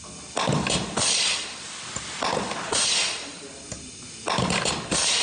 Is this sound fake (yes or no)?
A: no